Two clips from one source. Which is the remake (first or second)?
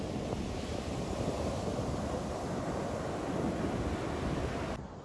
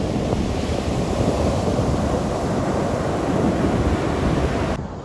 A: second